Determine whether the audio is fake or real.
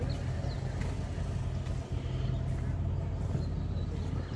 real